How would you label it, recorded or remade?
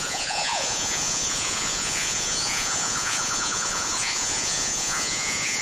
remade